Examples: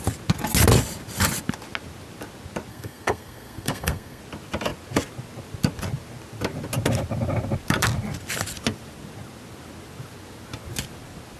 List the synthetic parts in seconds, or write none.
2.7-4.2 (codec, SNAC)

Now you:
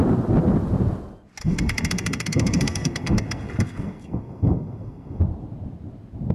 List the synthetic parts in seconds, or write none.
1.4-5.2 (codec, SNAC)

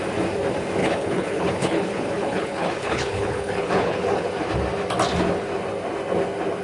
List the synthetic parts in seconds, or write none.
0.8-4.3 (codec, HILCodec)

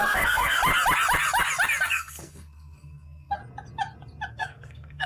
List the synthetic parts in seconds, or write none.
0.0-0.6 (codec, SNAC); 1.8-3.4; 4.3-5.1

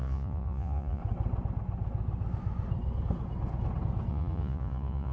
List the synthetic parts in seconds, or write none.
0.0-1.0 (vocoder, Vocos); 4.1-5.1

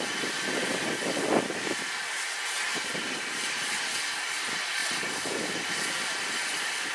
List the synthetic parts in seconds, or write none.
2.7-3.6 (vocoder, BigVGAN v2)

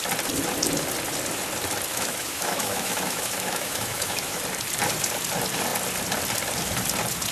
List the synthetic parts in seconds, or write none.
1.9-4.4 (autoencoder, DAC-VAE)

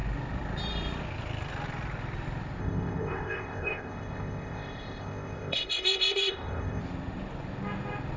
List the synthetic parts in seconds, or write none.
2.6-6.8 (codec, ZipCodec)